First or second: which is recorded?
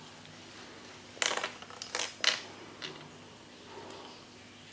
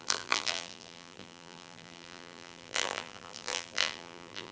first